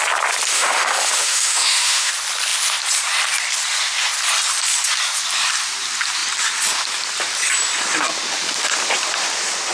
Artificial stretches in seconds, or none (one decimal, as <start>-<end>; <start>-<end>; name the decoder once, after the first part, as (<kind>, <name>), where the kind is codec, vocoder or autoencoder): 0.5-2.1 (autoencoder, DAC-VAE)